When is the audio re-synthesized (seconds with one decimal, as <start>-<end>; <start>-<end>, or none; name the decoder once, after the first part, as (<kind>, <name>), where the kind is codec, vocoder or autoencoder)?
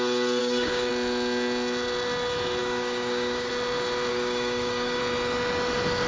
0.4-0.9 (codec, DAC); 2.6-3.5; 4.1-5.0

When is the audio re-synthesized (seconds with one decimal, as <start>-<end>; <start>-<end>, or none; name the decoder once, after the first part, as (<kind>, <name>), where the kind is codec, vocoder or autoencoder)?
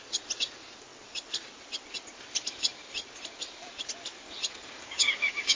4.8-5.6 (codec, DAC)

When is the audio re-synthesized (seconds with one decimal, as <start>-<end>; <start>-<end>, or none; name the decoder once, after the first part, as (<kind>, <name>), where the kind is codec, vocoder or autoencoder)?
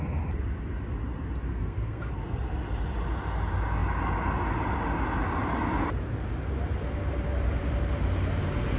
1.5-2.1 (codec, SNAC)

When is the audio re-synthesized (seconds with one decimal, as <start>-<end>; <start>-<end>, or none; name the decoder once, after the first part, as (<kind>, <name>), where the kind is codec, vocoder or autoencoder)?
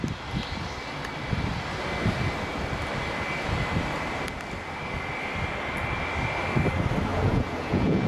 7.1-8.1 (vocoder, Vocos)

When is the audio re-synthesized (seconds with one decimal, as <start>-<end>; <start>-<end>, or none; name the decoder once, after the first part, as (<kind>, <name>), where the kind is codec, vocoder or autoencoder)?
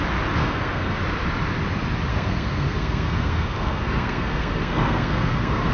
0.4-0.9 (codec, SNAC); 2.1-5.7